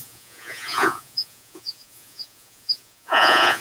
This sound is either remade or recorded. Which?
remade